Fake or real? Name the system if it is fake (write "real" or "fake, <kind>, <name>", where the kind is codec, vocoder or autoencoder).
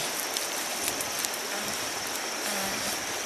real